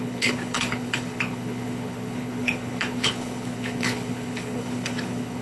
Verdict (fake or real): fake